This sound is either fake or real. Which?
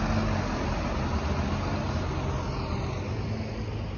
real